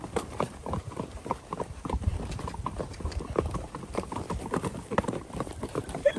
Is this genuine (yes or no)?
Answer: no